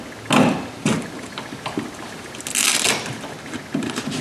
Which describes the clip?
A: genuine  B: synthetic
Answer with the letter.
A